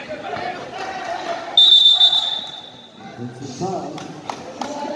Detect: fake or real real